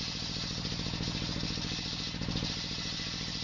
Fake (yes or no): no